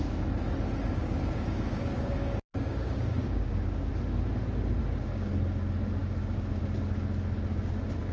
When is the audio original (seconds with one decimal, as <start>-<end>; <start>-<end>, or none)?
0.0-1.0; 3.9-4.8; 5.3-6.0; 6.6-8.1